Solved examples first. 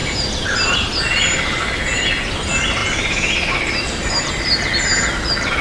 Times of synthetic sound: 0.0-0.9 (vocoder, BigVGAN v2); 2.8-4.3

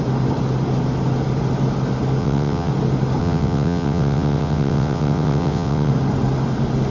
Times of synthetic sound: 2.2-2.7 (vocoder, WaveNeXt); 3.2-5.9

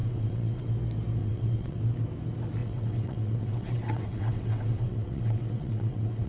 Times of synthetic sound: 0.0-0.7 (vocoder, WaveNeXt); 1.2-1.8; 2.6-6.3

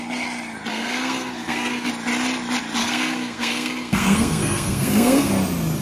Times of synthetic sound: 0.7-1.9 (codec, SNAC); 2.8-5.3

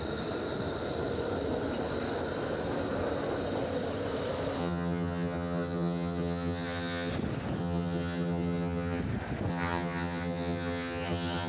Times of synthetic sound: 4.6-7.1 (vocoder, HiFi-GAN); 7.6-9.0; 9.5-11.5

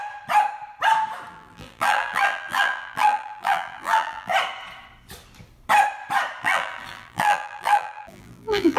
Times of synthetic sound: 1.3-4.3 (vocoder, BigVGAN v2); 6.4-8.8

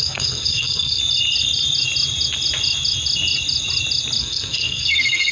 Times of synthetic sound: 0.0-1.0 (codec, SNAC); 4.2-5.3